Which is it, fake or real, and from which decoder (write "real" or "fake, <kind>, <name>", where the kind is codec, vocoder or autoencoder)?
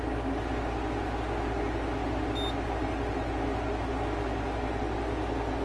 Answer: real